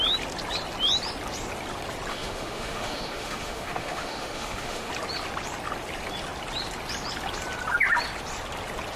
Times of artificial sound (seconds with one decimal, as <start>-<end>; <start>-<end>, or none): 2.1-4.9